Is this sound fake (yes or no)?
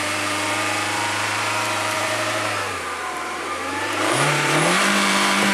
yes